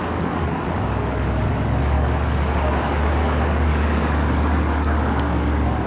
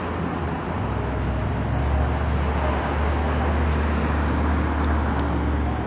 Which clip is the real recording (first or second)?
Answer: second